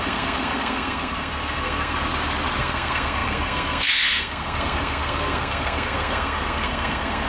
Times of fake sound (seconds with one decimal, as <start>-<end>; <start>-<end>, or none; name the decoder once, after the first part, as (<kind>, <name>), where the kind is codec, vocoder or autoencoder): 0.0-2.1 (codec, SNAC); 2.6-7.3